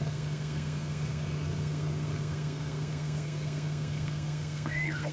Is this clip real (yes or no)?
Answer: no